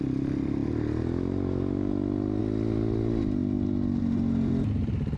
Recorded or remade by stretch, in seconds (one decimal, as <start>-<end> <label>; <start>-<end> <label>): 0.0-5.2 recorded